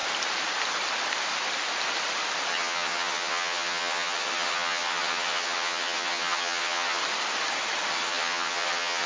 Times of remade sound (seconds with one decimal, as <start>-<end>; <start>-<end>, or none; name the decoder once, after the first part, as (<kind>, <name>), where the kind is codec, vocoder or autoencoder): 2.5-7.0 (vocoder, HiFi-GAN); 7.9-9.1